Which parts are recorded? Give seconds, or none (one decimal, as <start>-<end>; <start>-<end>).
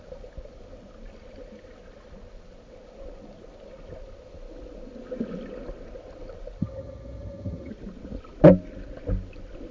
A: 0.0-6.6; 7.7-9.7